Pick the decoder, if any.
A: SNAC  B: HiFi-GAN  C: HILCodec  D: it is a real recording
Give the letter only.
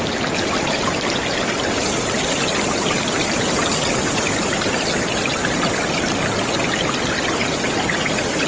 D